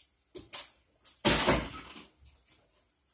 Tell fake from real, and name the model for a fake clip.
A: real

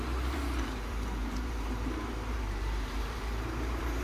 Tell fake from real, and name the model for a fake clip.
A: fake, vocoder, BigVGAN v2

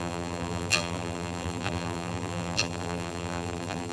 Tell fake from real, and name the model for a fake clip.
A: fake, vocoder, BigVGAN v2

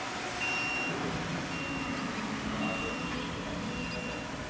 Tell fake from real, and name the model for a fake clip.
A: real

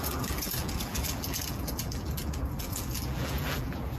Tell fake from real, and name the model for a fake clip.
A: fake, vocoder, BigVGAN v2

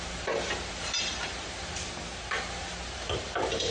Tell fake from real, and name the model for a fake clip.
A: fake, vocoder, BigVGAN v2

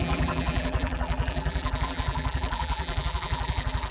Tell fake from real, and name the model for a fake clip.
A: fake, vocoder, BigVGAN v2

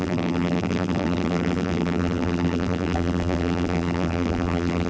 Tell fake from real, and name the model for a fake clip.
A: fake, vocoder, BigVGAN v2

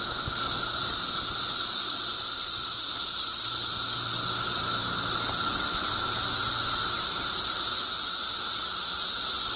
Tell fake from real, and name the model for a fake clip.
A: real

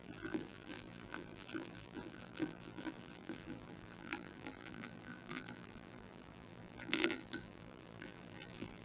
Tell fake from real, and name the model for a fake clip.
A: fake, vocoder, BigVGAN v2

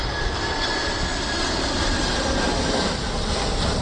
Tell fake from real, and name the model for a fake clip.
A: real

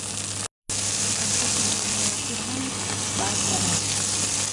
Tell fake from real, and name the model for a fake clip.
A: real